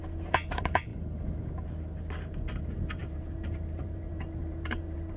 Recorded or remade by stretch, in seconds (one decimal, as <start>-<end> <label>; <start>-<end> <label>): 0.0-0.9 remade; 0.9-2.6 recorded; 2.6-5.2 remade